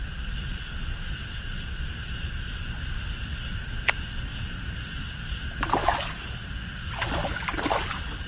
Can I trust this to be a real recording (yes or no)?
yes